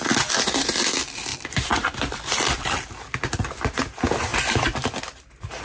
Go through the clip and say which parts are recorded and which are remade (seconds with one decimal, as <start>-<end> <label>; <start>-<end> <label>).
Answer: 0.0-5.6 recorded